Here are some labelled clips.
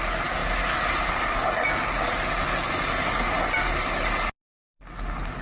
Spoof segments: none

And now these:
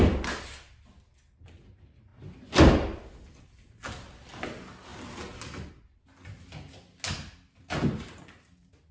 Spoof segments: none

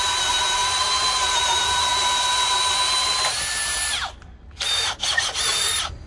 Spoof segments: none

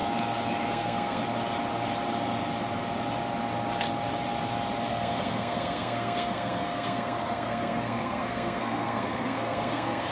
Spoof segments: 0.7-1.2 (codec, SNAC); 4.9-10.1